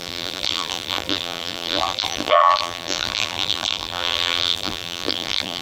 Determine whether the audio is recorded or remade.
remade